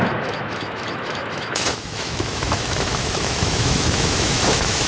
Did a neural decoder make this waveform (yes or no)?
yes